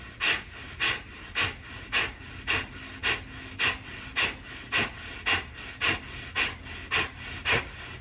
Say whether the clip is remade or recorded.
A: recorded